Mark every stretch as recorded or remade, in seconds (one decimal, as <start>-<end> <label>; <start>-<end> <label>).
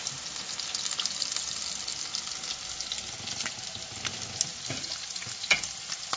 0.0-6.2 recorded